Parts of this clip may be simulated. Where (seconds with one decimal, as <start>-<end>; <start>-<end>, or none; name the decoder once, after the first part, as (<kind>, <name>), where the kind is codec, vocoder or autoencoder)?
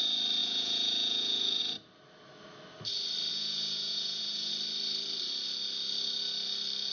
0.4-1.6 (vocoder, Vocos); 3.3-4.5